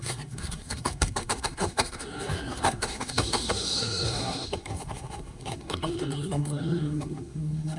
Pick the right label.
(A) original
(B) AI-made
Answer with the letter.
B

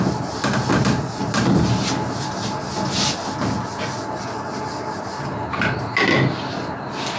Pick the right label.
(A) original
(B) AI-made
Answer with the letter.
A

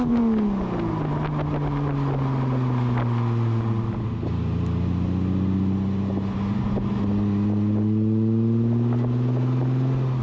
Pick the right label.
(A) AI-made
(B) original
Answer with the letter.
B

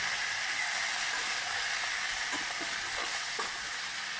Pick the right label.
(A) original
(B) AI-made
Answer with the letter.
A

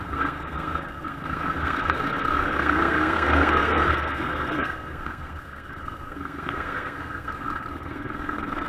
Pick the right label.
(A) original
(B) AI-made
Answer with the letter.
B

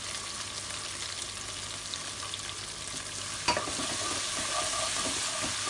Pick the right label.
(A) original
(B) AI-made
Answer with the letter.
A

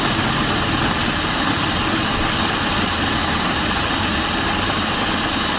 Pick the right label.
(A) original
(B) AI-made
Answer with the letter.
A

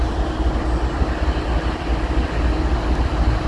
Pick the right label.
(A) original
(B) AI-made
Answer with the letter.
A